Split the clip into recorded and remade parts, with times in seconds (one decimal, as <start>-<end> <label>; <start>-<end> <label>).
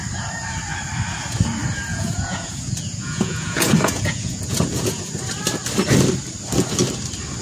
0.0-1.9 recorded; 1.9-5.1 remade; 5.1-7.4 recorded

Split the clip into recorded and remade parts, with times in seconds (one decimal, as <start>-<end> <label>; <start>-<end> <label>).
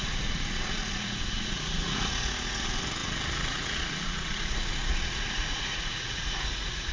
0.0-6.9 remade